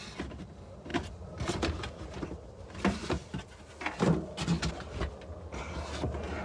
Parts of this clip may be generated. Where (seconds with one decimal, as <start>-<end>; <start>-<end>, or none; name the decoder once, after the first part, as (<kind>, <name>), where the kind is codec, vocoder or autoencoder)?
none